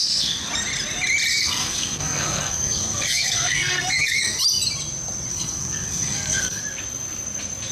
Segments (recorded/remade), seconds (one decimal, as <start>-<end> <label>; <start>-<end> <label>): 0.0-0.5 remade; 0.5-1.3 recorded; 1.3-4.4 remade; 4.4-5.3 recorded; 5.3-6.6 remade; 6.6-7.7 recorded